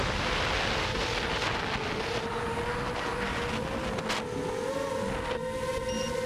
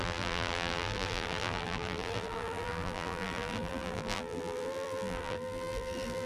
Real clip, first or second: first